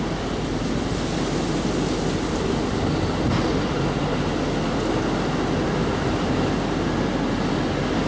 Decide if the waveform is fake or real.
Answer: real